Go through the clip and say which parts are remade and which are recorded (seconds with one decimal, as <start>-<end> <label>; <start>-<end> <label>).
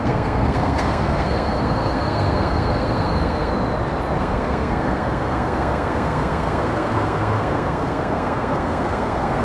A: 0.0-3.5 remade; 3.5-4.2 recorded; 4.2-9.4 remade